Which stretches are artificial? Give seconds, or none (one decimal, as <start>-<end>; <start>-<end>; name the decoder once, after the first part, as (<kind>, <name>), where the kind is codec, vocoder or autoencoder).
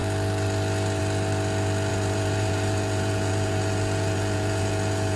1.9-5.2 (vocoder, Vocos)